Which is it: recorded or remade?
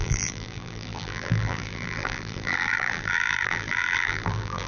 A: remade